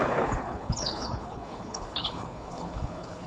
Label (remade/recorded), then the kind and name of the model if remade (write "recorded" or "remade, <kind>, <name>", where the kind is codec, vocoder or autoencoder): remade, codec, HILCodec